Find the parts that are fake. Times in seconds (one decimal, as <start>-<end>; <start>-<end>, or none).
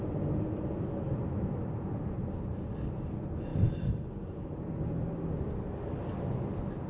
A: none